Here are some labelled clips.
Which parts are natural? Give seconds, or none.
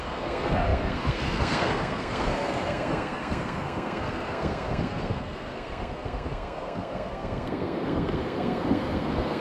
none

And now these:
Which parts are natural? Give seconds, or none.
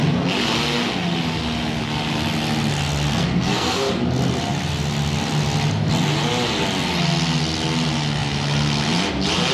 0.0-3.1; 3.9-9.5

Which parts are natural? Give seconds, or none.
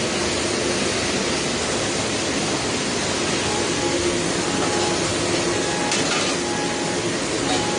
0.0-7.8